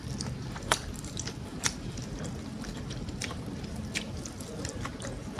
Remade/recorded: recorded